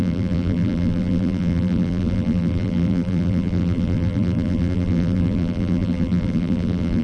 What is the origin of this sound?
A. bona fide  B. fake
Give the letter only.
B